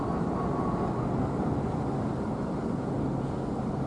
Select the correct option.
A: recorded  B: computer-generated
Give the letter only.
A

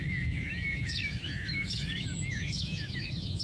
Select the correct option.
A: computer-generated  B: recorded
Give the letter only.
A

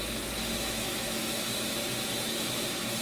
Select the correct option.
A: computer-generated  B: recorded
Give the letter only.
A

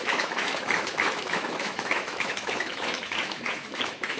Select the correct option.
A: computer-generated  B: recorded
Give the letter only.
A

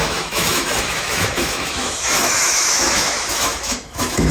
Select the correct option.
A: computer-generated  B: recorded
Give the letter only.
A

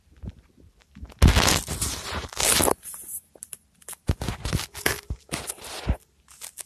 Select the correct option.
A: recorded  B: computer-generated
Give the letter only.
A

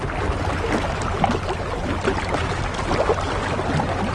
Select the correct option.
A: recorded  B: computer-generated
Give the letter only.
A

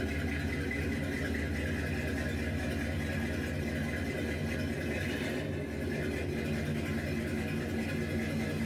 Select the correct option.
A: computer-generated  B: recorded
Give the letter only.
B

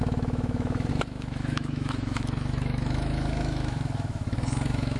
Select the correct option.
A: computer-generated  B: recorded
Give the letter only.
A